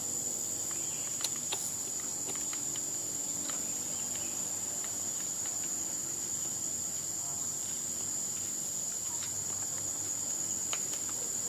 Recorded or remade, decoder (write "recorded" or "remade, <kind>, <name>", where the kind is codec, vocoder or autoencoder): recorded